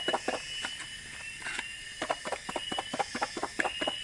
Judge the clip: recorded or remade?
recorded